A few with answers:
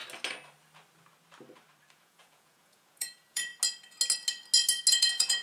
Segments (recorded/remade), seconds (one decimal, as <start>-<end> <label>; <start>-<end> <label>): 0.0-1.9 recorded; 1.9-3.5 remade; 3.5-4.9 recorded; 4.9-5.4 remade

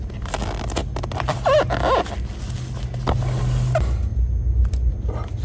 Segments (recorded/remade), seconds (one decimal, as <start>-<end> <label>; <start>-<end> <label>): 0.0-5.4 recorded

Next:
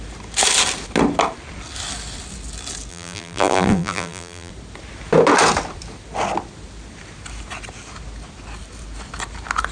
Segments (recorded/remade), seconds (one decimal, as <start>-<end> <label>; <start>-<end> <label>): 0.0-2.9 recorded; 2.9-4.5 remade; 4.5-9.7 recorded

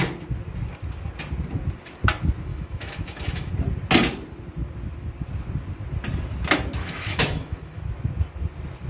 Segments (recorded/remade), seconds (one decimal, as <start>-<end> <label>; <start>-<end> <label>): 0.0-2.5 recorded; 2.5-3.5 remade; 3.5-6.8 recorded; 6.8-7.8 remade; 7.8-8.9 recorded

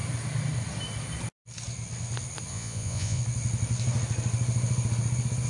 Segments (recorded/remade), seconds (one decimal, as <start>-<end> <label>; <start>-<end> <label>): 0.0-2.5 recorded; 2.5-3.2 remade; 3.2-5.5 recorded